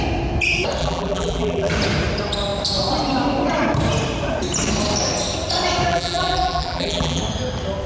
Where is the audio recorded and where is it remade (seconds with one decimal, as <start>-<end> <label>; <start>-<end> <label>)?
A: 0.0-0.8 recorded; 0.8-1.7 remade; 1.7-5.9 recorded; 5.9-7.2 remade; 7.2-7.9 recorded